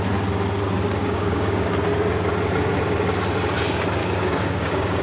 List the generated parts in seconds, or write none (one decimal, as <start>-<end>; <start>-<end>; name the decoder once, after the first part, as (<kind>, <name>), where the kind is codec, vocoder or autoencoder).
1.0-1.7 (codec, DAC); 4.0-5.0